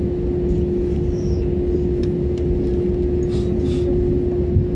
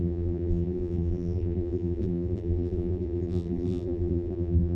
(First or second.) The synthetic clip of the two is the second